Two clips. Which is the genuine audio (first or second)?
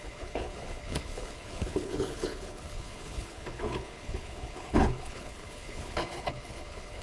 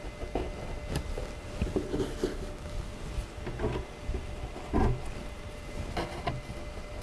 second